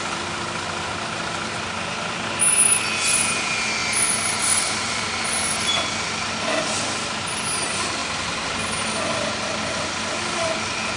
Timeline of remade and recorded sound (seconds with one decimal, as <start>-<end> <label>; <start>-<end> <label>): 0.0-3.8 recorded; 3.8-5.7 remade; 5.7-11.0 recorded